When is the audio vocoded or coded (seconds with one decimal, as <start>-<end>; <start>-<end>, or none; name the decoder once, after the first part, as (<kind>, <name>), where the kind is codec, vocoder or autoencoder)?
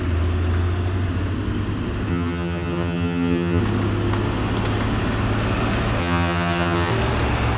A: 2.1-3.6 (vocoder, HiFi-GAN); 6.0-6.9